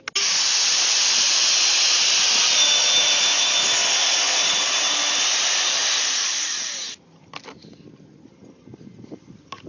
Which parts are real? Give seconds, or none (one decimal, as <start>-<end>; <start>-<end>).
0.0-9.7